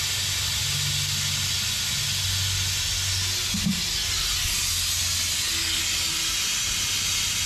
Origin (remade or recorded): recorded